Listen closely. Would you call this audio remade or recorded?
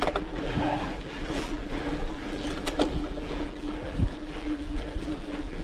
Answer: remade